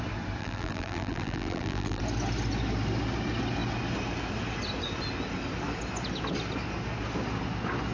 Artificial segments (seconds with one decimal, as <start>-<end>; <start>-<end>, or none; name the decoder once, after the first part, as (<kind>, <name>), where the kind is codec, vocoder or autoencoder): 0.4-2.0 (vocoder, BigVGAN v2)